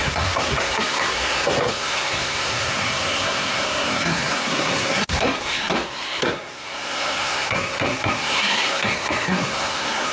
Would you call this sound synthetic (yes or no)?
yes